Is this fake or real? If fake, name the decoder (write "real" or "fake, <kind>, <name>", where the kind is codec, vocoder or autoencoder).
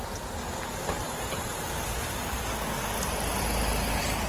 real